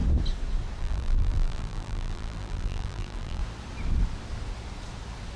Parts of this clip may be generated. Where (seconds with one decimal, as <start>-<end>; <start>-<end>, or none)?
0.8-3.4